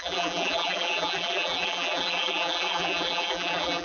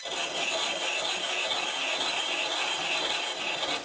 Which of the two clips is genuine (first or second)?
second